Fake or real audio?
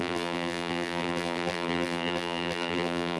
fake